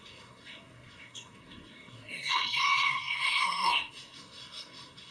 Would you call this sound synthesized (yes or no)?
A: yes